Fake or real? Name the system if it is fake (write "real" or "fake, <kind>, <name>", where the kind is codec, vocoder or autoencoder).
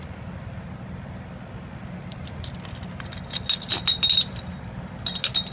real